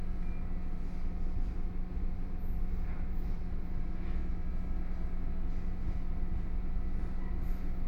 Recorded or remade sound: recorded